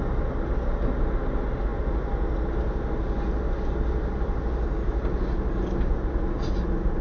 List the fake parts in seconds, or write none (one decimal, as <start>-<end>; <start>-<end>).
none